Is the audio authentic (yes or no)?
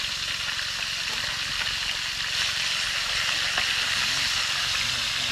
yes